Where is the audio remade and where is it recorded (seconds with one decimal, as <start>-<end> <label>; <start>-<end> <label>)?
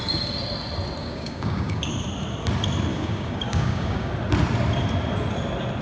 0.0-1.0 recorded; 1.0-1.9 remade; 1.9-2.9 recorded; 2.9-4.1 remade; 4.1-5.8 recorded